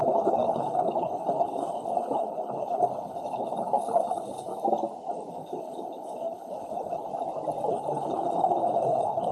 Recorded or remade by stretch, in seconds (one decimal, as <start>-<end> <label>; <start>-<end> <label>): 0.0-4.5 remade; 4.5-5.3 recorded; 5.3-7.1 remade; 7.1-7.7 recorded; 7.7-9.3 remade